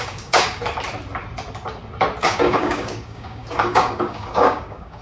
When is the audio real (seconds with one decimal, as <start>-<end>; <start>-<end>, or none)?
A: 0.6-2.2